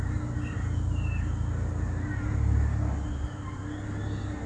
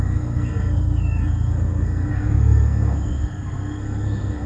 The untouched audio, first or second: first